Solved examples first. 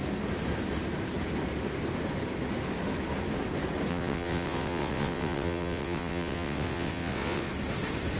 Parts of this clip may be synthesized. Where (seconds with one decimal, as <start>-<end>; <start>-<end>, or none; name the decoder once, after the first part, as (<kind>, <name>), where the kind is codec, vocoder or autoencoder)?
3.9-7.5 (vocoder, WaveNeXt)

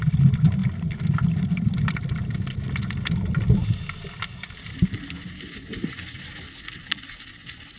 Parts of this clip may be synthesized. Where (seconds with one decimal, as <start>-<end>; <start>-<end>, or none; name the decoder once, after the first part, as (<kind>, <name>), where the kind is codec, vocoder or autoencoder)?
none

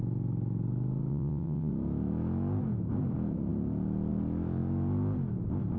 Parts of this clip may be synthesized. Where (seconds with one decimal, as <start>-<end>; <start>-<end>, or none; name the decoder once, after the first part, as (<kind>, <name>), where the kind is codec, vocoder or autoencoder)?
1.1-1.7 (vocoder, WaveNeXt)